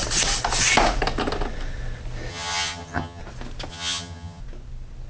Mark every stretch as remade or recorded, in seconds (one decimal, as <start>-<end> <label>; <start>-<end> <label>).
0.0-2.3 recorded; 2.3-3.2 remade; 3.2-3.7 recorded; 3.7-4.4 remade; 4.4-5.1 recorded